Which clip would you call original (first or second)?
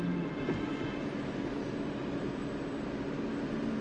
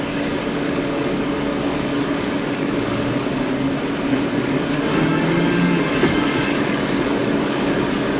first